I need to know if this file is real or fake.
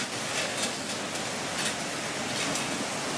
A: real